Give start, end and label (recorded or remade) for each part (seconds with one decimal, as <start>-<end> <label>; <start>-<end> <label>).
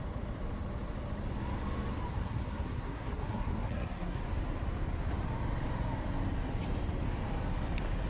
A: 0.0-2.1 recorded; 2.1-4.2 remade; 4.2-8.1 recorded